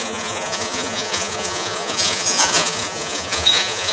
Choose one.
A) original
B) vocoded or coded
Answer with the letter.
B